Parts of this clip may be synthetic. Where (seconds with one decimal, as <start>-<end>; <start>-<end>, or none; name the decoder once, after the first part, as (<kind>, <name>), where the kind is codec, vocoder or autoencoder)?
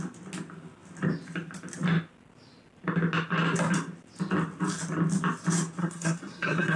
5.8-6.8 (codec, SNAC)